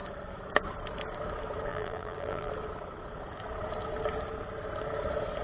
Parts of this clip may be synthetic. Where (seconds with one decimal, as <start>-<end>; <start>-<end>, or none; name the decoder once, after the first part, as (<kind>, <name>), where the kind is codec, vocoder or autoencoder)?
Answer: 1.7-2.5 (vocoder, BigVGAN v2)